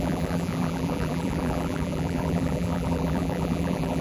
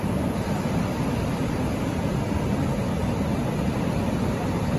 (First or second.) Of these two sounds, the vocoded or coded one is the first